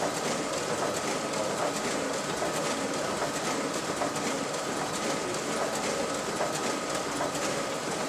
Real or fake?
real